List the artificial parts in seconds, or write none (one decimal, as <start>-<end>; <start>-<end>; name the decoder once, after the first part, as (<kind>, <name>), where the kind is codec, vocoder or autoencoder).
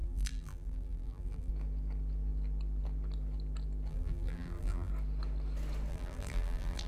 0.0-1.5 (vocoder, BigVGAN v2); 3.9-4.9; 5.9-6.9